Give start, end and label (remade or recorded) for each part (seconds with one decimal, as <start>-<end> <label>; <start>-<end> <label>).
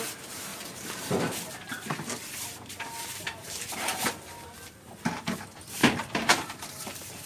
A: 0.0-0.5 recorded; 0.5-4.9 remade; 4.9-5.8 recorded; 5.8-7.3 remade